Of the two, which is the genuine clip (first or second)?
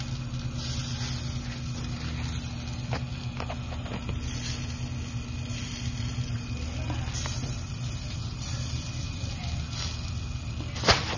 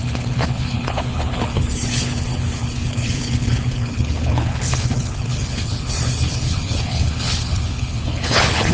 first